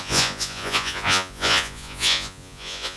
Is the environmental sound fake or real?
fake